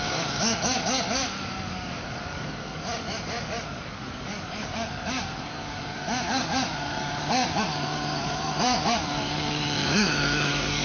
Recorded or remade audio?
remade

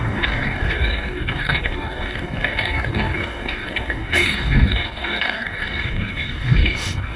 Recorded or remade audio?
remade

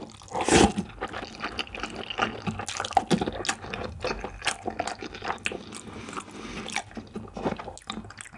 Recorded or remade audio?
recorded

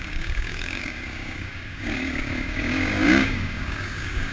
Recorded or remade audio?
remade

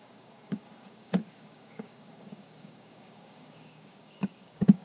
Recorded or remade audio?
remade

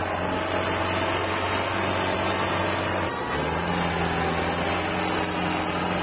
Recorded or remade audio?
recorded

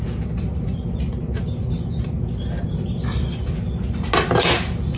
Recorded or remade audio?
recorded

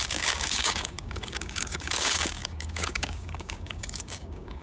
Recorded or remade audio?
remade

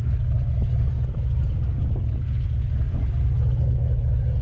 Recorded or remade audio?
recorded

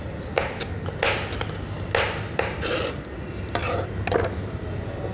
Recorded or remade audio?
recorded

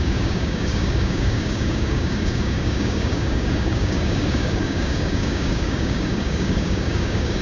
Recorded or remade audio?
remade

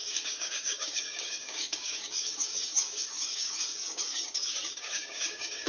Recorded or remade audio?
remade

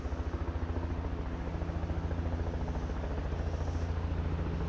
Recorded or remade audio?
recorded